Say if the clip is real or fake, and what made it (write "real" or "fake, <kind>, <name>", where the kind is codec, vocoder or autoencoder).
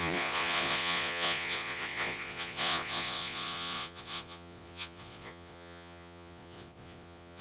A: fake, vocoder, Vocos